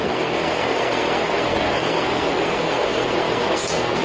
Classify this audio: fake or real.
fake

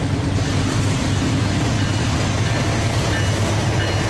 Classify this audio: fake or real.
real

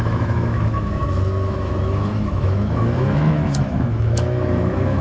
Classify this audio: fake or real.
fake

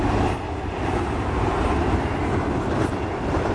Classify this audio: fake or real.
real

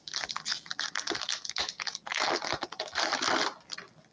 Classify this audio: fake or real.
real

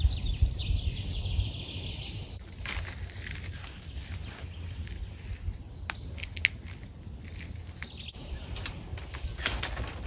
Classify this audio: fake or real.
real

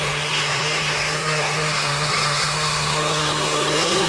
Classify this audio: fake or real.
fake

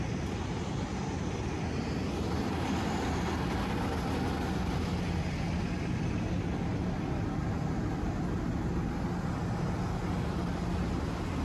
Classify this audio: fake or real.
real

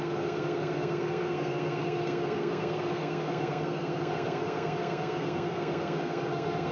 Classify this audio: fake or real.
fake